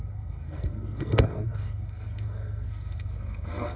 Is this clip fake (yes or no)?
yes